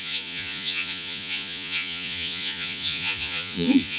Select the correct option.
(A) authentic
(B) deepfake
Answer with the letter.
B